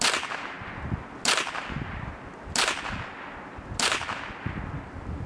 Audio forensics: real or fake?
real